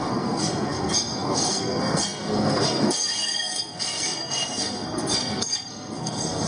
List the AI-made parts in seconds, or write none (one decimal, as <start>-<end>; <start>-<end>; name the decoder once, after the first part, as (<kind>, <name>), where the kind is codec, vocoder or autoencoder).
0.0-6.5 (codec, SNAC)